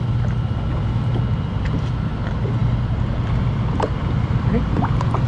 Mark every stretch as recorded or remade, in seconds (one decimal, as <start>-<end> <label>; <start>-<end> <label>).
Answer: 0.0-2.6 recorded; 2.6-5.3 remade

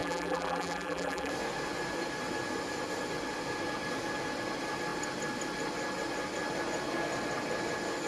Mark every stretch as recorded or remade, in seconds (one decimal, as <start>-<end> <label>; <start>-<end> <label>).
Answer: 0.0-1.3 remade; 1.3-8.1 recorded

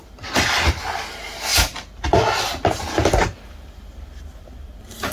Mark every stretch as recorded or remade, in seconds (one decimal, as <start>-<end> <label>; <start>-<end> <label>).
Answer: 0.0-1.5 remade; 1.5-3.2 recorded; 3.2-5.1 remade

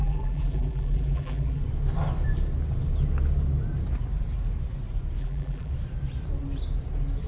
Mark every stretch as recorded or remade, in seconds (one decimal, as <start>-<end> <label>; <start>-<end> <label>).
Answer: 0.0-1.6 remade; 1.6-5.2 recorded; 5.2-5.7 remade; 5.7-7.3 recorded